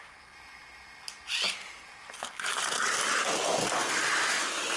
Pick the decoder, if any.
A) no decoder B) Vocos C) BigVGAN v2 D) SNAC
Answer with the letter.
A